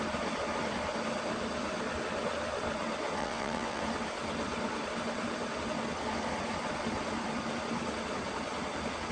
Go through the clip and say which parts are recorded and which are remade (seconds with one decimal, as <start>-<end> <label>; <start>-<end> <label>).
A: 0.0-3.2 recorded; 3.2-3.8 remade; 3.8-9.1 recorded